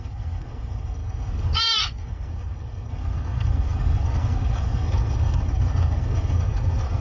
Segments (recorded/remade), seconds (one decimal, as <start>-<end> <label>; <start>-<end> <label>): 0.0-7.0 remade